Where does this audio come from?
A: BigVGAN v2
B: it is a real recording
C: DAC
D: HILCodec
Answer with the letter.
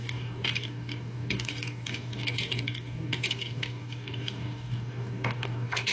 C